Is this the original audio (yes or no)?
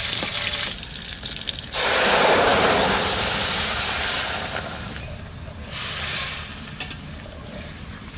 no